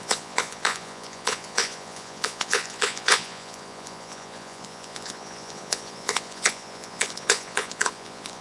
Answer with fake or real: fake